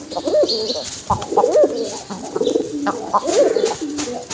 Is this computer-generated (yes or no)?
no